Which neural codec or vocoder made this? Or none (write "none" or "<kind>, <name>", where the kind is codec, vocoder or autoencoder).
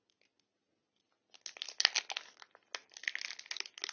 none